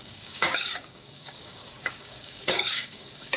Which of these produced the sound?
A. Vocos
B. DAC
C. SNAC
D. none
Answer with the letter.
B